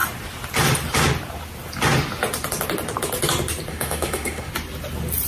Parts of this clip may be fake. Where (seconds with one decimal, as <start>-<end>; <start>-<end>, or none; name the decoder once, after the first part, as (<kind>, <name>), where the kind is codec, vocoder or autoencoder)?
3.7-4.5 (autoencoder, DAC-VAE)